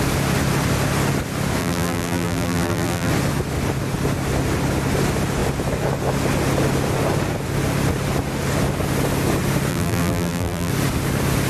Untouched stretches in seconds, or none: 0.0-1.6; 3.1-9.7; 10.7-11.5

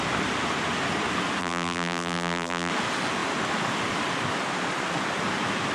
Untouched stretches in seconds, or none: 0.0-1.4; 2.7-5.7

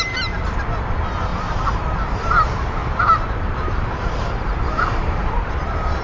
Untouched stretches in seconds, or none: 0.0-1.3; 2.2-2.8; 5.6-6.0

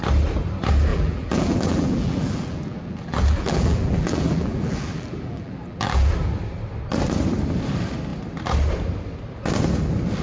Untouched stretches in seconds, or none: 0.0-0.9; 6.1-10.2

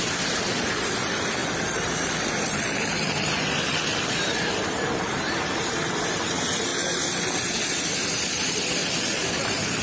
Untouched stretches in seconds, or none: 1.4-2.2; 6.7-7.2; 8.8-9.4

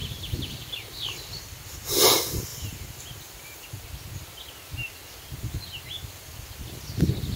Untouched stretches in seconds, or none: 1.3-2.5; 3.0-7.4